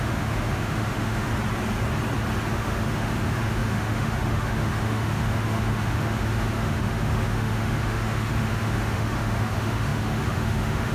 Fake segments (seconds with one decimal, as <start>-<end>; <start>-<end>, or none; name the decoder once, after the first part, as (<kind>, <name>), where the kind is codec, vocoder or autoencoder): 0.0-1.3 (autoencoder, DAC-VAE); 2.5-10.9